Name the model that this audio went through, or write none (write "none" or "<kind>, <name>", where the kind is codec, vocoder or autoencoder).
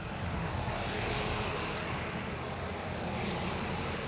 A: codec, DAC